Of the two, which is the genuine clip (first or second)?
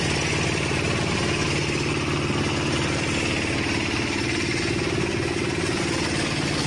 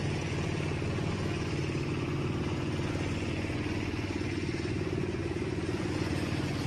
first